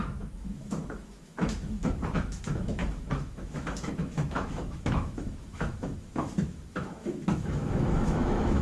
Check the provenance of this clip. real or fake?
fake